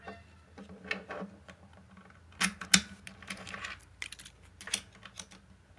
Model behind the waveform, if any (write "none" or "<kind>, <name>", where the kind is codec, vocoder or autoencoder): none